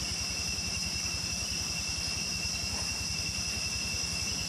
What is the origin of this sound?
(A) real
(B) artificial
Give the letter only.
B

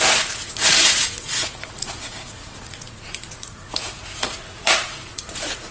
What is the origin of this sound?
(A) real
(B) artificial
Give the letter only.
B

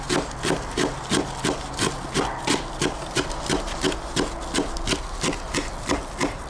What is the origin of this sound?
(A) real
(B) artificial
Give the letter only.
A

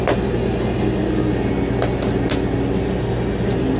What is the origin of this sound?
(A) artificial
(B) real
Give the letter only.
B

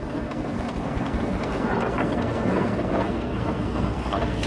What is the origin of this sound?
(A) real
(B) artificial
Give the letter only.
B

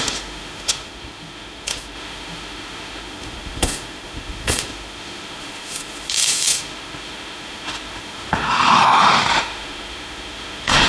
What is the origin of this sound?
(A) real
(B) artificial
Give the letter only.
B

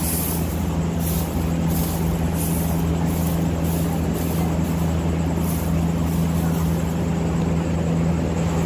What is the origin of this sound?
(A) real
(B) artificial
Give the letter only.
A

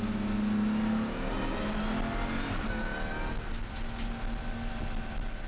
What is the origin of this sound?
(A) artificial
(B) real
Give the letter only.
B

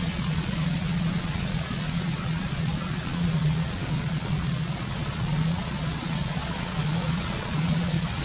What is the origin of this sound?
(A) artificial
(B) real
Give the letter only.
A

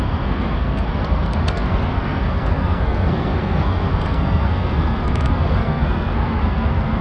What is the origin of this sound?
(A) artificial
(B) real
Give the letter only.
A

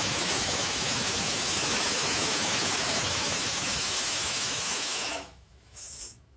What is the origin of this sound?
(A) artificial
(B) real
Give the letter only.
A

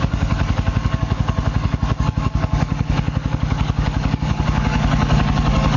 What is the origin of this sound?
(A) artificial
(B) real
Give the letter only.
A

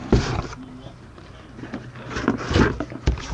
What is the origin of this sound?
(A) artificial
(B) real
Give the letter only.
B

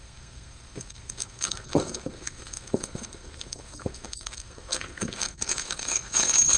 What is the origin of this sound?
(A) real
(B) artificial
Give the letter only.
B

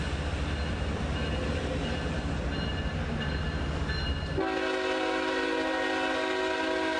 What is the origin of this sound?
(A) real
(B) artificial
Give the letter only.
A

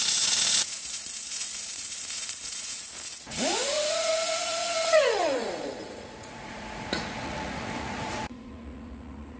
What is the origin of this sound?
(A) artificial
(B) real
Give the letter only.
A